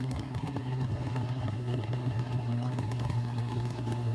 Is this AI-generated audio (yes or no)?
yes